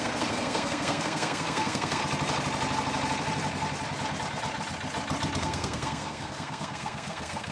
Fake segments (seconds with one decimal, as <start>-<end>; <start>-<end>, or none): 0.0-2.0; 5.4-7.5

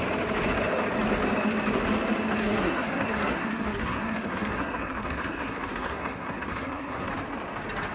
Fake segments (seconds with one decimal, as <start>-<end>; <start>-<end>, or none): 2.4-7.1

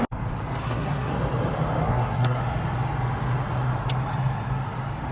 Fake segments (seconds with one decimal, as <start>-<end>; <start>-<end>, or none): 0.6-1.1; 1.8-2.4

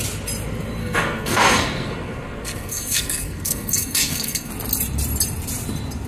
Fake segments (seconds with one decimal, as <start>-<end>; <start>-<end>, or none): 0.8-4.5